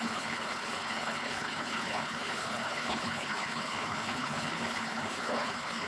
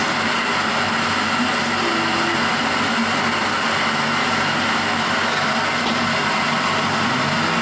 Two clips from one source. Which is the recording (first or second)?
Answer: second